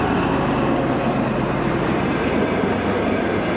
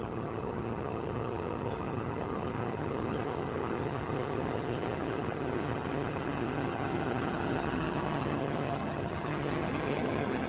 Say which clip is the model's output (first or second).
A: second